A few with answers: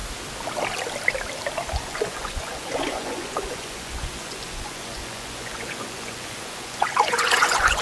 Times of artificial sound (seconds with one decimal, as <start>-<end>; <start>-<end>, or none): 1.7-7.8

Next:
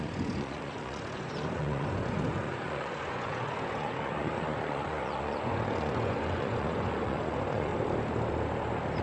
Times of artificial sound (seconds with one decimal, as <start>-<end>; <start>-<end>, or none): 0.0-7.7

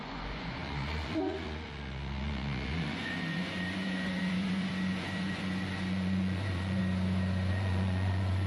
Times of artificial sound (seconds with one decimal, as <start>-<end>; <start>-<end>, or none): 0.0-6.8; 7.5-8.5

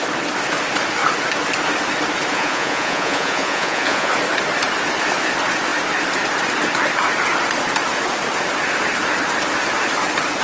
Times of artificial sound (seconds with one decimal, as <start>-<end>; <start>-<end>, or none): 2.3-4.1